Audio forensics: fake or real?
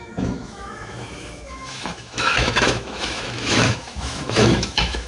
fake